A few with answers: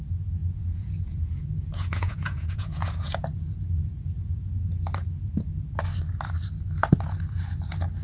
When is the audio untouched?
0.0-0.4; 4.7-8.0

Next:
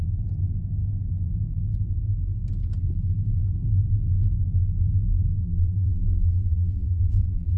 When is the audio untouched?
0.0-5.4

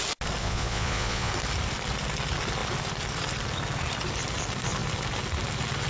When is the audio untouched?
0.0-0.4; 1.3-5.9